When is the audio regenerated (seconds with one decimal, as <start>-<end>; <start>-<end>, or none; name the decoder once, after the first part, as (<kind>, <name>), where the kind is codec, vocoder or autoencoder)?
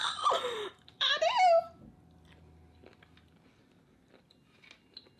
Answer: 0.0-1.1 (vocoder, BigVGAN v2)